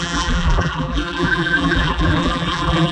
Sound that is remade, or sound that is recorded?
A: remade